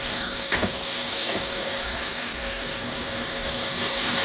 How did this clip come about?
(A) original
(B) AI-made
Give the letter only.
B